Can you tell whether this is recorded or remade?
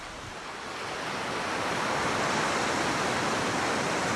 recorded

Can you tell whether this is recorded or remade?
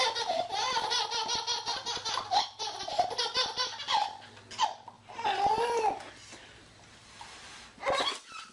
recorded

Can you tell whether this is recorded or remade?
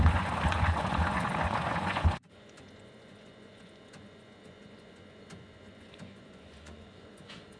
remade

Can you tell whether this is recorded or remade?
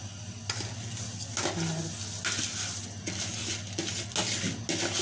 recorded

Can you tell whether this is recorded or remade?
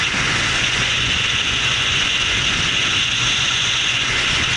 remade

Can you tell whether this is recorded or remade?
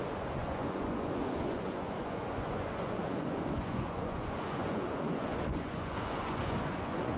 remade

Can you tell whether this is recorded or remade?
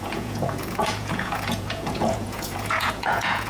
remade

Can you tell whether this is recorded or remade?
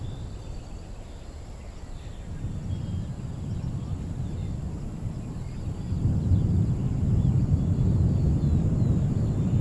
recorded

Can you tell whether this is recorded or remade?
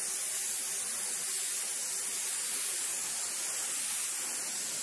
recorded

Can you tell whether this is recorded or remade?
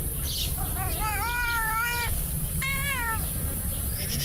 recorded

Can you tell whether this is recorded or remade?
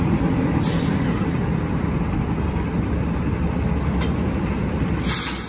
recorded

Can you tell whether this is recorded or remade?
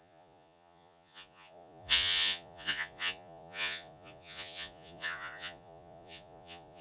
remade